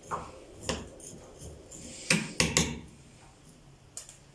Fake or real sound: real